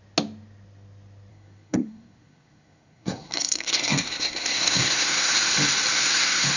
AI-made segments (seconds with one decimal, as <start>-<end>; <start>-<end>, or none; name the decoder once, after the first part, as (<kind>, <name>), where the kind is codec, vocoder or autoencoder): 1.3-5.3 (codec, SNAC); 5.9-6.6